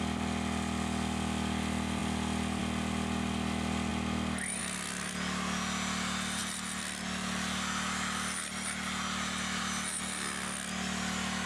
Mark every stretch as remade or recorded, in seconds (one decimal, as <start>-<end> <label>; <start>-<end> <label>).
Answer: 0.0-11.5 recorded